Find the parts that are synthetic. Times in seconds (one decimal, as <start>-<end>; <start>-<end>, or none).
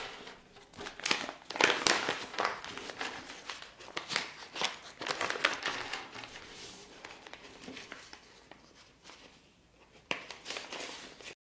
6.8-10.3